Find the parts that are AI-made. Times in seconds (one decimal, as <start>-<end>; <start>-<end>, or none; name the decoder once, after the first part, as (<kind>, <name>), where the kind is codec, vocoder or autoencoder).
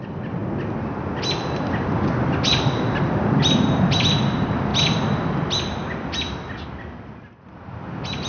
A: none